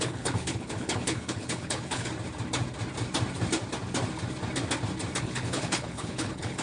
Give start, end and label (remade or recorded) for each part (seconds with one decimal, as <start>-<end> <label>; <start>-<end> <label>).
0.0-2.1 remade; 2.1-5.2 recorded; 5.2-6.6 remade